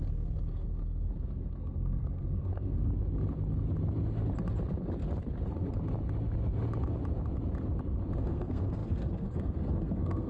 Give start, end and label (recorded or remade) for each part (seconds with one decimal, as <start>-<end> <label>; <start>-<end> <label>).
0.0-2.9 remade; 2.9-8.2 recorded; 8.2-10.3 remade